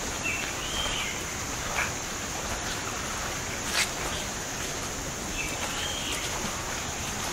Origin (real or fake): real